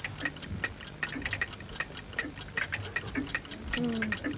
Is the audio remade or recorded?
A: recorded